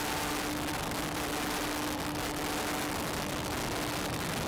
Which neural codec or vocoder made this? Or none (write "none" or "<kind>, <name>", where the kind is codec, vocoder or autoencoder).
none